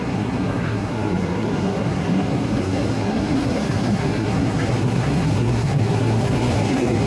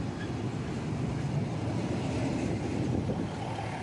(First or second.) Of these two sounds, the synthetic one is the first